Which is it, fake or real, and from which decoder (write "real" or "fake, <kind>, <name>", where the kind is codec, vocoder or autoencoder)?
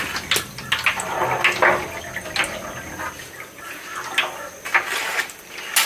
real